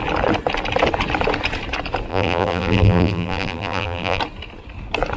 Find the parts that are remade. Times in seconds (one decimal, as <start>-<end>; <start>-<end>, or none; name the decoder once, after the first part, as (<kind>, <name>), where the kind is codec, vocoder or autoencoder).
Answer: 2.1-4.2 (vocoder, BigVGAN v2)